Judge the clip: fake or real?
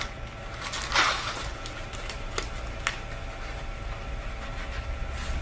real